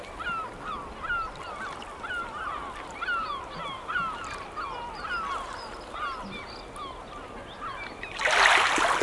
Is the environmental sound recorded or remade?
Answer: recorded